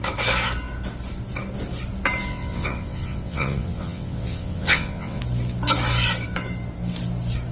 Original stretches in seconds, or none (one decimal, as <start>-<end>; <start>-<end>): 0.0-2.3; 5.2-7.5